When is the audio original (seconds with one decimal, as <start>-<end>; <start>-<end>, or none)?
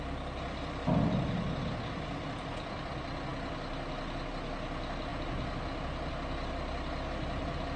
0.0-7.8